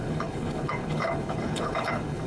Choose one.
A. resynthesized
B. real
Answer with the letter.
A